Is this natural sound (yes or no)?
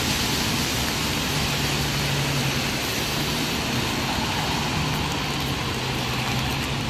yes